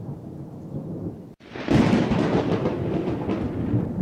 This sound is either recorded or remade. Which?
recorded